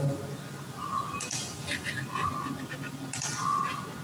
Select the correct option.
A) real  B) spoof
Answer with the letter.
A